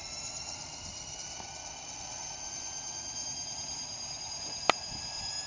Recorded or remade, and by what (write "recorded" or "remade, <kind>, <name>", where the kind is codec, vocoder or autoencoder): recorded